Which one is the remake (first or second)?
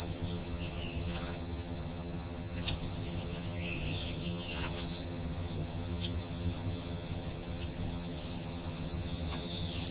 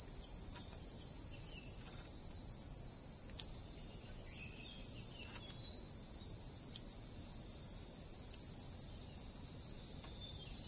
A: first